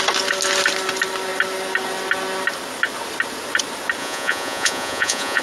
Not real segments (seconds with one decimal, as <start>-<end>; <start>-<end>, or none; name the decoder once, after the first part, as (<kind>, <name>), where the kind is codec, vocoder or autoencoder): 4.0-5.4 (vocoder, Vocos)